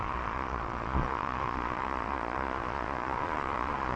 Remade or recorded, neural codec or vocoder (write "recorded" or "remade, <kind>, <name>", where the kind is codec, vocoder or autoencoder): remade, vocoder, Vocos